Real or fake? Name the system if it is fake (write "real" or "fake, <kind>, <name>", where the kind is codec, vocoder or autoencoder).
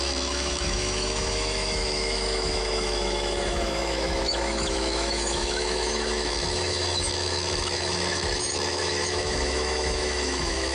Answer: fake, autoencoder, DAC-VAE